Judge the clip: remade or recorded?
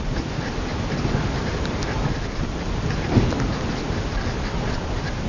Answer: recorded